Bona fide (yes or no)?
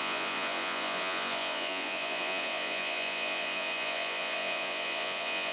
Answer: no